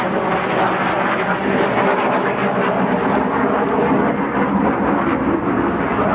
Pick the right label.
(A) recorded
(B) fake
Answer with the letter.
A